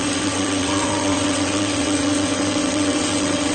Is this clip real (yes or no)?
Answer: no